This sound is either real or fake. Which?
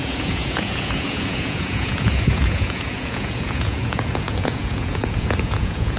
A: fake